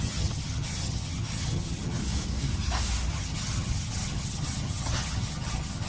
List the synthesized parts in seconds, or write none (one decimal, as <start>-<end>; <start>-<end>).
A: 0.0-2.0; 3.1-5.9